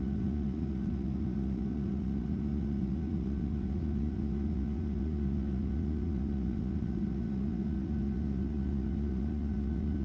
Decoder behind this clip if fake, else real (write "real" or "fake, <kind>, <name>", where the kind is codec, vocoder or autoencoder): fake, vocoder, Vocos